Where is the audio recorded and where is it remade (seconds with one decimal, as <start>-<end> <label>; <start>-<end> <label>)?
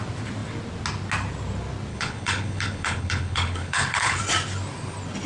0.0-1.9 recorded; 1.9-4.2 remade; 4.2-5.3 recorded